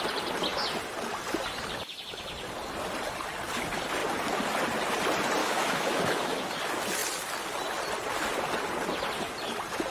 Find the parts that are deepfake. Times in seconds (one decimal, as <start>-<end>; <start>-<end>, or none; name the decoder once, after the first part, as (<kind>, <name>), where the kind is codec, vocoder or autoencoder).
5.4-6.5 (autoencoder, DAC-VAE)